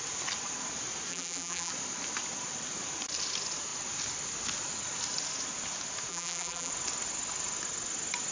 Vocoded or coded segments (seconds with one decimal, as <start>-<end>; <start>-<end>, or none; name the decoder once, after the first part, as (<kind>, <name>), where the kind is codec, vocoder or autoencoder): 1.1-1.7 (vocoder, BigVGAN v2); 6.1-6.7